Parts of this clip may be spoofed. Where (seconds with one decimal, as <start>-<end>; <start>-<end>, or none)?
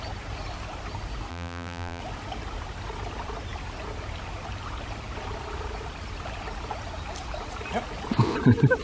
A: 1.3-2.0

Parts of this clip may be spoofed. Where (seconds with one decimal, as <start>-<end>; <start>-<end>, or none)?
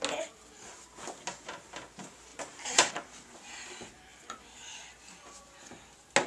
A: 2.3-2.9